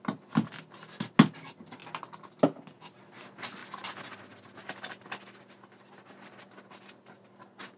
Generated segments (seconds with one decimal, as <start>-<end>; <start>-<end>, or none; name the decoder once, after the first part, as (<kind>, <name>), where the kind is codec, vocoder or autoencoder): none